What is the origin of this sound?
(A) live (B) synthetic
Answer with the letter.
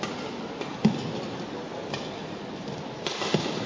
B